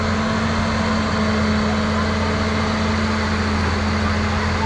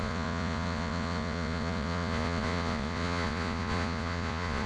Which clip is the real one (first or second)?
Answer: first